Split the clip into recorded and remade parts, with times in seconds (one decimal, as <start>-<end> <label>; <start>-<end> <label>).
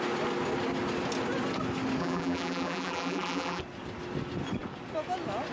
0.0-2.0 recorded; 2.0-3.6 remade; 3.6-5.5 recorded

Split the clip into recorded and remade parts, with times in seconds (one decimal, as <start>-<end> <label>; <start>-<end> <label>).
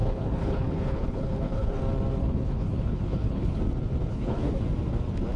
0.0-1.8 remade; 1.8-2.2 recorded; 2.2-3.6 remade; 3.6-4.1 recorded; 4.1-4.6 remade; 4.6-5.4 recorded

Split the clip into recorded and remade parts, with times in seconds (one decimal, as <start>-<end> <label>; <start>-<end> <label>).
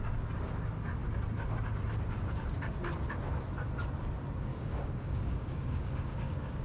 0.0-4.5 recorded; 4.5-6.6 remade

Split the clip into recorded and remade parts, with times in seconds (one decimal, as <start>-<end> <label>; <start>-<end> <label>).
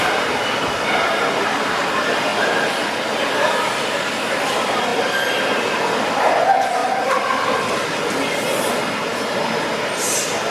0.0-10.5 recorded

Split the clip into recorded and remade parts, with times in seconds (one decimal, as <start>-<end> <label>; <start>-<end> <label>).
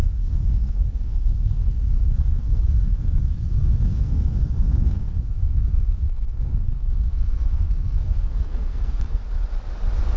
0.0-9.2 remade; 9.2-10.2 recorded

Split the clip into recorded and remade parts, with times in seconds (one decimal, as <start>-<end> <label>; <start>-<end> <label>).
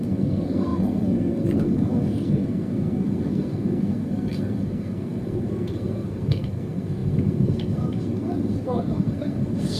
0.0-9.8 remade